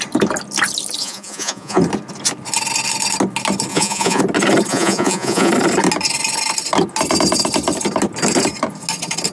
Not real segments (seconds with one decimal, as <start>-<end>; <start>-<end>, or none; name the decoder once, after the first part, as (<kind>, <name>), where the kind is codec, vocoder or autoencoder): 1.0-1.8 (vocoder, Vocos); 3.7-4.2; 4.7-5.5